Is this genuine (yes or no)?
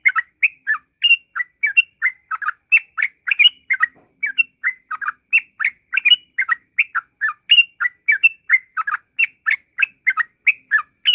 yes